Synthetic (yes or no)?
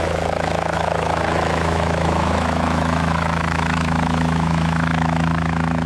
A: yes